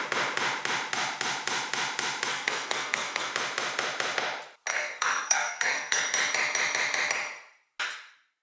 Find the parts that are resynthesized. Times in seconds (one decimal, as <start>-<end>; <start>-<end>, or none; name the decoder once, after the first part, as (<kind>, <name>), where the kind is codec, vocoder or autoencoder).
2.3-3.3 (codec, SNAC); 4.7-6.0